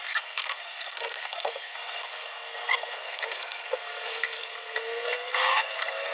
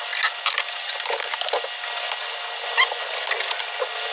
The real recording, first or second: second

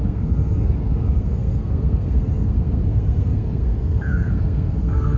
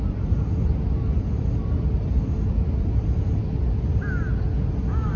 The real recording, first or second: second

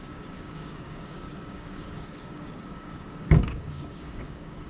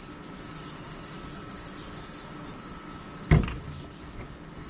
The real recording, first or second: second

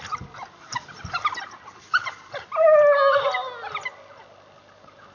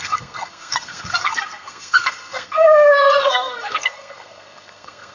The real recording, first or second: first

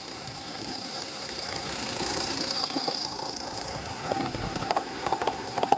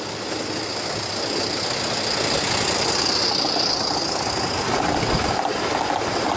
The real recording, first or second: second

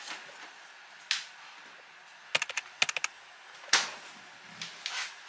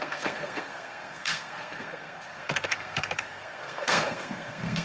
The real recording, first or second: first